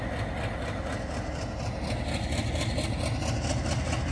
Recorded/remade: recorded